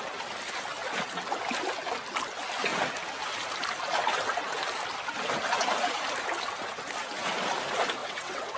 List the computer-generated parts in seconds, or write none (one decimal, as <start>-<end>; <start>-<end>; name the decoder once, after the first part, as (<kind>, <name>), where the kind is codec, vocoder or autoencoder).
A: 8.0-8.6 (vocoder, WaveNeXt)